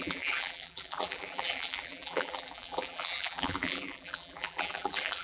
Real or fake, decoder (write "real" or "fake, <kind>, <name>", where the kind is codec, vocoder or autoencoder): fake, vocoder, BigVGAN v2